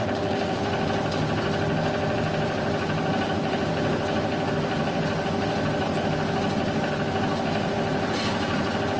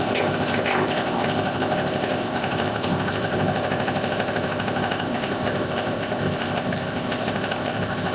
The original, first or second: first